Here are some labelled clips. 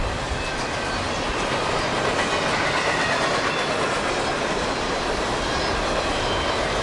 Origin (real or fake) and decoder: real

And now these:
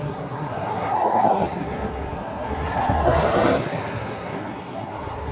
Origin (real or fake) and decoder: fake, codec, SNAC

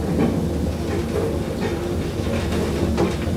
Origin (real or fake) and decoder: real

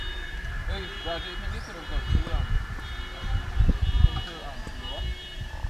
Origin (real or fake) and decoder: real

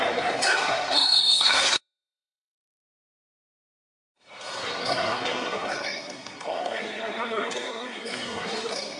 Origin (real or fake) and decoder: fake, codec, SNAC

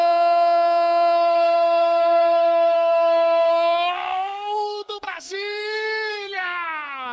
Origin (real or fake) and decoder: fake, codec, SNAC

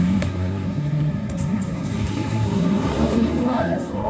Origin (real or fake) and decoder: fake, codec, SNAC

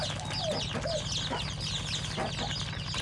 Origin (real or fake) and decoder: real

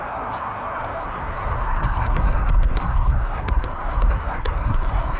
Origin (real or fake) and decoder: fake, codec, SNAC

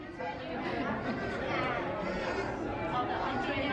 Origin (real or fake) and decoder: real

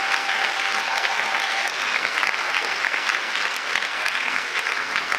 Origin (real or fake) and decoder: fake, codec, SNAC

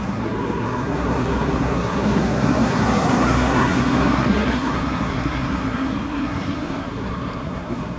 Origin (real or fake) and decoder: fake, codec, SNAC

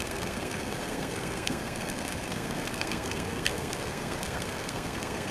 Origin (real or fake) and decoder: fake, codec, SNAC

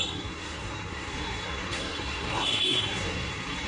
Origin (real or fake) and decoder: fake, codec, SNAC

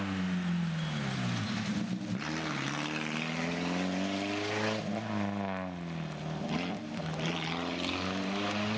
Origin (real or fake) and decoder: real